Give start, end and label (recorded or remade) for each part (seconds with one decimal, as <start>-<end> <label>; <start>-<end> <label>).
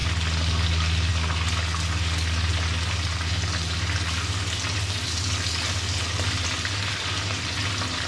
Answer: 0.0-8.1 recorded